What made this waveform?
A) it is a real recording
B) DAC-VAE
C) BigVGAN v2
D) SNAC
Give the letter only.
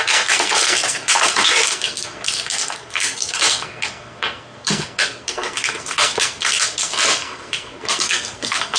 D